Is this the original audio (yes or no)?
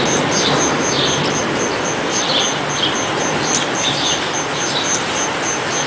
yes